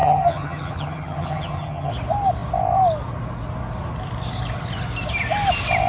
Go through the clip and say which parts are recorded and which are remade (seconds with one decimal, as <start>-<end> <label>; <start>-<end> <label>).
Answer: 0.0-1.9 remade; 1.9-5.9 recorded